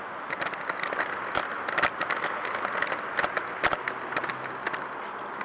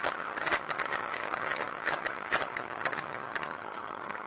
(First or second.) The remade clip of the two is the second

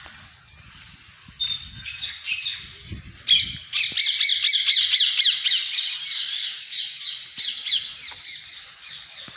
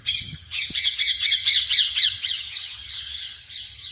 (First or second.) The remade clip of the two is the second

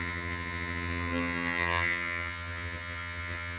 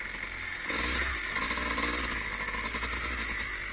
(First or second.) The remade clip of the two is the first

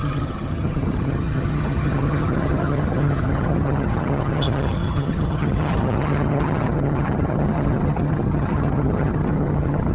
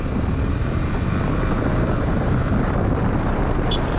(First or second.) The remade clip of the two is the first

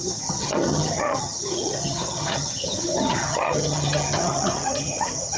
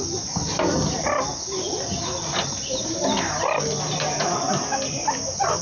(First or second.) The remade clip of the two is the first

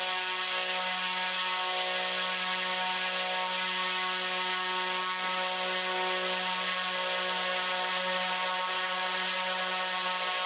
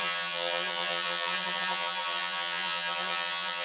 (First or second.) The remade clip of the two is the second